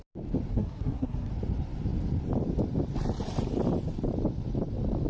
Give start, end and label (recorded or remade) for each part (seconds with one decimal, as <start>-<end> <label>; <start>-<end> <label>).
0.0-0.5 recorded; 0.5-1.3 remade; 1.3-5.1 recorded